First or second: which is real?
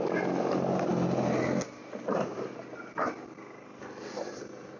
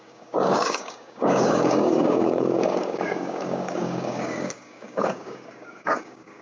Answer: first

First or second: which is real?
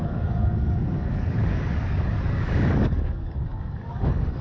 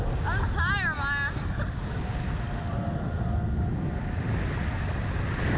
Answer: second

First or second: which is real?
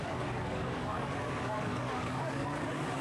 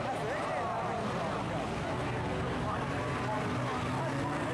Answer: second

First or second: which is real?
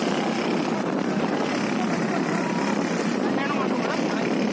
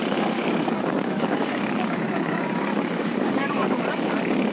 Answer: first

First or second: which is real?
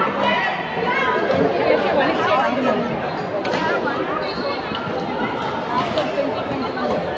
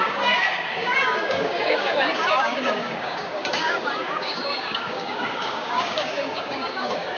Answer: first